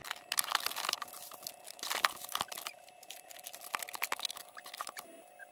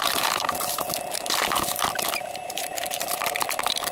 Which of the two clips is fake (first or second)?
second